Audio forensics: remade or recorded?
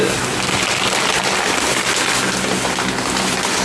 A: recorded